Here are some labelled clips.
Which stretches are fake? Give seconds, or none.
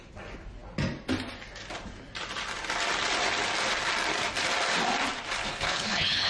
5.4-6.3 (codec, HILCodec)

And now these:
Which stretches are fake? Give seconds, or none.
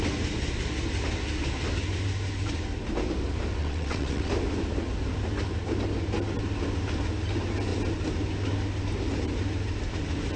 3.6-4.3 (vocoder, WaveNeXt)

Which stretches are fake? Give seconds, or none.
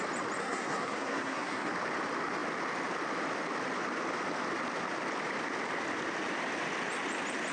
0.4-1.7 (codec, SNAC)